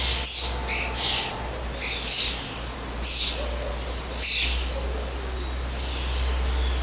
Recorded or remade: recorded